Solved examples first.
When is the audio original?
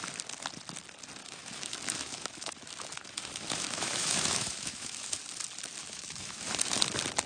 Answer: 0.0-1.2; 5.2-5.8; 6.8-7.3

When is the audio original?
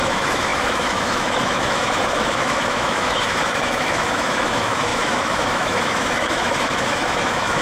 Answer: none